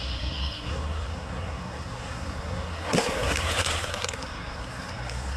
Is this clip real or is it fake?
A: fake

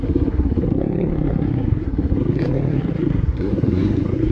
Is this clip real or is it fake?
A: fake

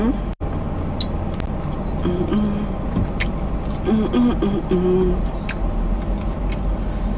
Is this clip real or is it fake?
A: real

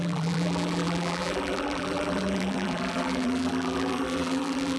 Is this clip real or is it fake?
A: fake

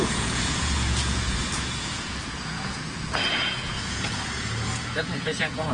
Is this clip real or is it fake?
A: fake